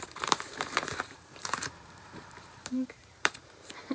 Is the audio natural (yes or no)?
no